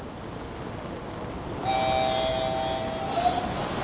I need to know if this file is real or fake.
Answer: real